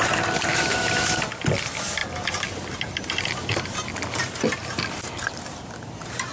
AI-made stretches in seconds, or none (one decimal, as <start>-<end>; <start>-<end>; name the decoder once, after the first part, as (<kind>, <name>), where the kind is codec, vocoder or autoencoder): 0.5-1.1 (autoencoder, DAC-VAE)